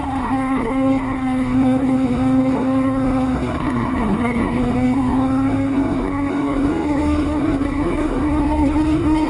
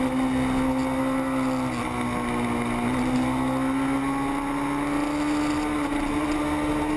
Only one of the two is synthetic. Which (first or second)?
first